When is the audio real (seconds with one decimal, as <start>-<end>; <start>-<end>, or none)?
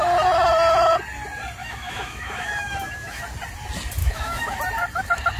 0.0-1.6; 3.2-4.0; 4.6-5.4